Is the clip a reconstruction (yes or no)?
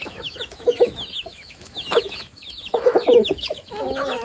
yes